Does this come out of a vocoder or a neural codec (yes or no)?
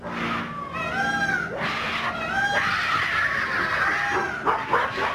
no